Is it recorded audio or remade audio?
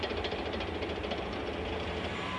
recorded